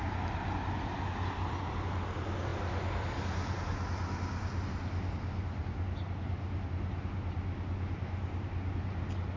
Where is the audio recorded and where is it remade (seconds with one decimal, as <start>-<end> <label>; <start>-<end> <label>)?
0.0-9.4 recorded